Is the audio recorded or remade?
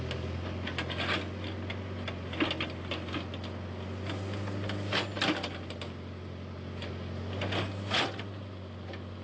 recorded